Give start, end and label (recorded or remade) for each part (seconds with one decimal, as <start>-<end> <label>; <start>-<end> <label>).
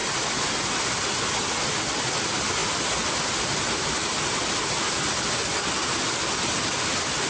0.0-7.3 recorded